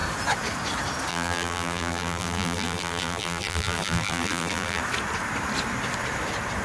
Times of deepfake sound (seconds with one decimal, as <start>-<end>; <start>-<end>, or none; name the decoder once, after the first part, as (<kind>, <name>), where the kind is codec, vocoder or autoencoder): 1.1-4.8 (vocoder, BigVGAN v2)